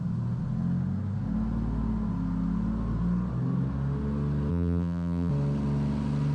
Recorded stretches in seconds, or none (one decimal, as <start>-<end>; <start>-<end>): 0.0-4.5; 5.3-6.3